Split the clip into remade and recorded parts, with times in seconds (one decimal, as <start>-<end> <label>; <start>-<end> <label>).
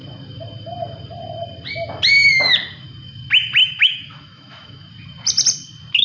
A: 0.0-3.6 recorded; 3.6-4.9 remade; 4.9-6.0 recorded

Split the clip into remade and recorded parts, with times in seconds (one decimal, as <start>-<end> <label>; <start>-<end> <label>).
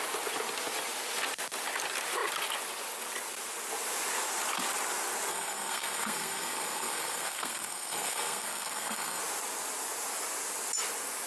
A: 0.0-5.3 recorded; 5.3-9.2 remade; 9.2-11.3 recorded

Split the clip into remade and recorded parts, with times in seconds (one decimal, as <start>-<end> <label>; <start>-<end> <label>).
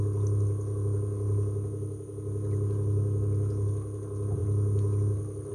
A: 0.0-5.5 recorded